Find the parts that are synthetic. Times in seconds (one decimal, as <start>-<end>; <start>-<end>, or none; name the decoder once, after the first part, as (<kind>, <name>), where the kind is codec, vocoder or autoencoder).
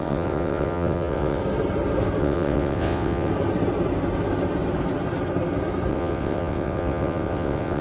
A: 0.0-1.4 (vocoder, WaveNeXt); 2.2-3.3; 5.9-7.8